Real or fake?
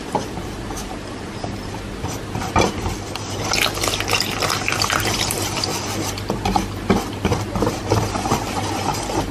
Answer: fake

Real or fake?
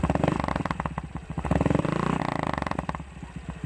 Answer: fake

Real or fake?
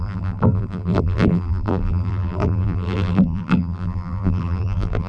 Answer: fake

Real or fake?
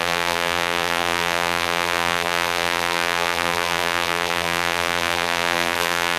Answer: fake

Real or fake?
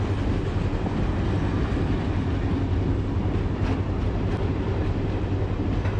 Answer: real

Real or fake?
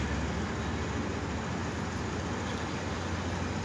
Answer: real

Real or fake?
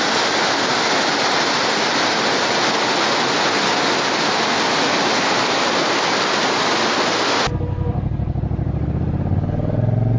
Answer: real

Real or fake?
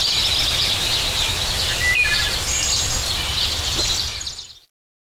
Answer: real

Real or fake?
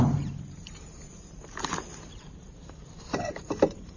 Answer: fake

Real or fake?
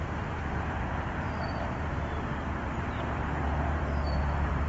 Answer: fake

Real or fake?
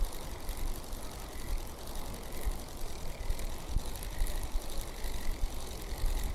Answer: real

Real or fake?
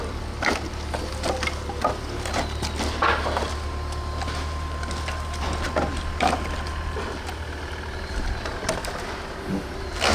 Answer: real